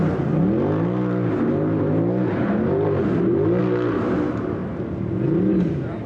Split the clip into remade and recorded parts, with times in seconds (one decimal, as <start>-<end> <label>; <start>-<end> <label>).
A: 0.0-6.1 recorded